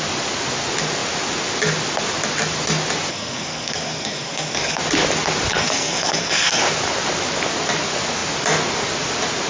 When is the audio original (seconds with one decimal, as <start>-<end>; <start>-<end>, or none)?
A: 0.0-3.1; 4.8-5.5; 6.6-9.5